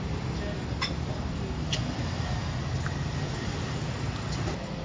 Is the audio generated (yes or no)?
no